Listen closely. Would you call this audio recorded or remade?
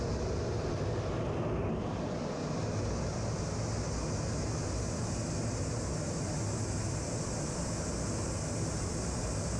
recorded